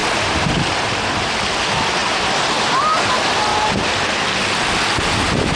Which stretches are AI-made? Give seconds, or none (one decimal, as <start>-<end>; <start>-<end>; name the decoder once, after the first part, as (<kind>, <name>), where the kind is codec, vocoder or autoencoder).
0.0-1.3 (vocoder, BigVGAN v2); 2.0-2.8; 3.5-4.1